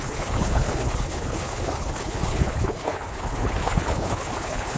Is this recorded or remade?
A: remade